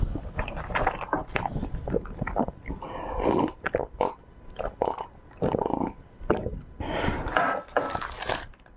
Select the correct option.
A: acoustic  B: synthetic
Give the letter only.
A